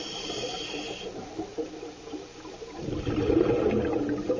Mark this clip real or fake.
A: real